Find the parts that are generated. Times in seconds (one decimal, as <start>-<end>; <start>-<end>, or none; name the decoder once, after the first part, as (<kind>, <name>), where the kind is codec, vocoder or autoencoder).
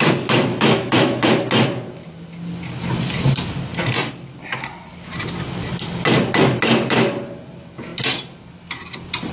0.5-1.3 (autoencoder, DAC-VAE)